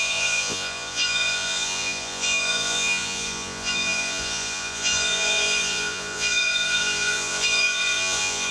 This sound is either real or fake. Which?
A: fake